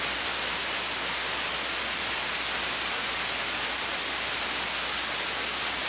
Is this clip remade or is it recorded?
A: recorded